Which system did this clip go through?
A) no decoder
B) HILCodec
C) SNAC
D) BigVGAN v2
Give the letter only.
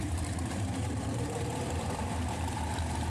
D